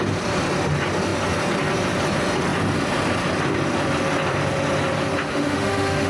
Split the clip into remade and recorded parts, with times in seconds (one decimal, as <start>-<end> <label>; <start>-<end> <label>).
0.0-5.3 recorded; 5.3-6.1 remade